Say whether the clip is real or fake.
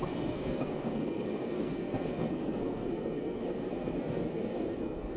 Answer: fake